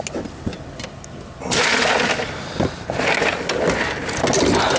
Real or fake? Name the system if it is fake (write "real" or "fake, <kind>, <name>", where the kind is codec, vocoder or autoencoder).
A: real